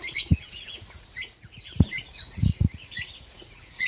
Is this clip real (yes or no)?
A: no